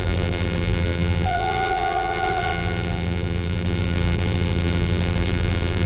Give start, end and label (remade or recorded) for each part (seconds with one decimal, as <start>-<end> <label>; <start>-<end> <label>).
0.0-5.9 remade